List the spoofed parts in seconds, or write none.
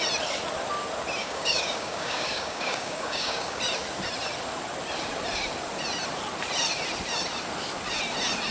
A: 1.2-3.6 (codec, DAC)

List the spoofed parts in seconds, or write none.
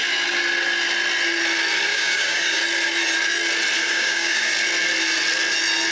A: 1.9-2.6 (codec, DAC); 3.8-4.5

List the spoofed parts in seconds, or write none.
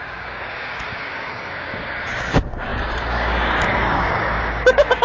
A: 0.0-5.0 (codec, DAC)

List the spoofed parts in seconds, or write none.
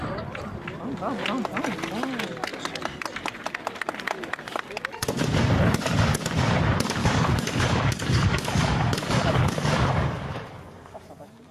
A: 7.0-11.5 (codec, DAC)